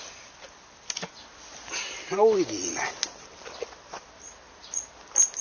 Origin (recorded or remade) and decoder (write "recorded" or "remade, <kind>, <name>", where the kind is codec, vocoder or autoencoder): recorded